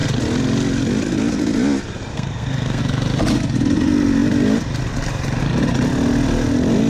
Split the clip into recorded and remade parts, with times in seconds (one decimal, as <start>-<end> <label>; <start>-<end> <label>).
0.0-2.1 recorded; 2.1-2.8 remade; 2.8-6.9 recorded

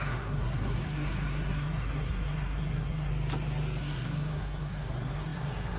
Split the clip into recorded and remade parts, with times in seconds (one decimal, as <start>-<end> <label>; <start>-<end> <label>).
0.0-3.1 remade; 3.1-3.8 recorded; 3.8-5.8 remade

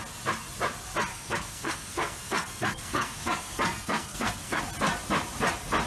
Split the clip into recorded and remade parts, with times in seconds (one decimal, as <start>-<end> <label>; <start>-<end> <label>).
0.0-1.1 recorded; 1.1-4.6 remade; 4.6-5.9 recorded

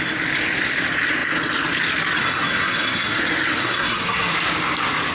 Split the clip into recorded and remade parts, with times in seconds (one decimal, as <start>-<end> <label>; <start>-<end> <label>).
0.0-2.2 recorded; 2.2-3.2 remade; 3.2-3.6 recorded; 3.6-4.3 remade; 4.3-5.1 recorded

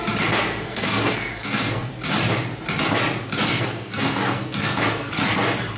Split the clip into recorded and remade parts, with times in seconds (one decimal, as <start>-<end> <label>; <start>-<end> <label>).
0.0-0.5 recorded; 0.5-1.9 remade; 1.9-3.5 recorded; 3.5-5.1 remade; 5.1-5.8 recorded

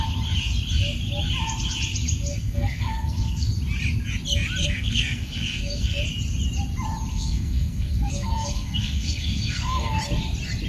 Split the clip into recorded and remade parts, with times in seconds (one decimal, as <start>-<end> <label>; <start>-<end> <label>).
0.0-2.3 recorded; 2.3-3.5 remade; 3.5-4.6 recorded; 4.6-6.0 remade; 6.0-7.1 recorded; 7.1-10.0 remade; 10.0-10.7 recorded

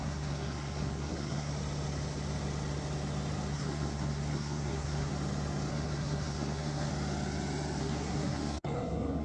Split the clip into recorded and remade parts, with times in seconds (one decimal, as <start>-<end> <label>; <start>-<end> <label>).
0.0-1.5 remade; 1.5-3.5 recorded; 3.5-5.1 remade; 5.1-5.7 recorded; 5.7-6.9 remade; 6.9-7.8 recorded; 7.8-9.2 remade